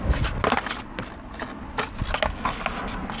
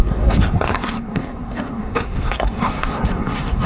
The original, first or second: first